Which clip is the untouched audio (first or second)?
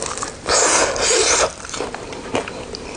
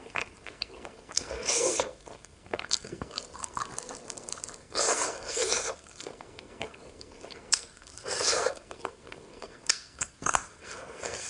first